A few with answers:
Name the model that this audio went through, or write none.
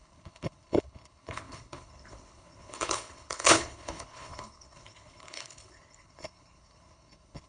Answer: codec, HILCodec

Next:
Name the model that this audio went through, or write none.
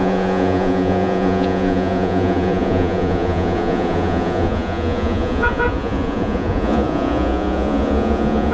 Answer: vocoder, Vocos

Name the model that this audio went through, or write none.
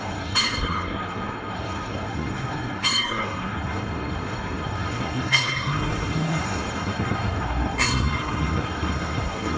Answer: codec, SNAC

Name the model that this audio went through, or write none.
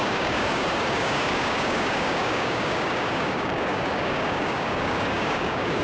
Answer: codec, DAC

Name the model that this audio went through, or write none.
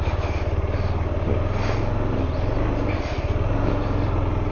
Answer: none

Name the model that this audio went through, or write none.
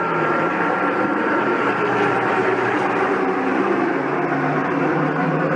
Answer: vocoder, BigVGAN v2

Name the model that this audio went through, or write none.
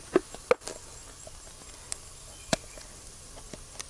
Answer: none